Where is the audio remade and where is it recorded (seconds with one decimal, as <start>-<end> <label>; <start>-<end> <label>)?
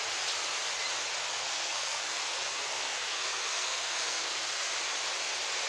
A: 0.0-1.3 recorded; 1.3-4.7 remade; 4.7-5.7 recorded